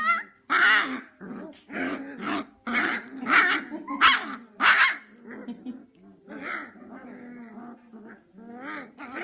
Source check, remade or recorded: recorded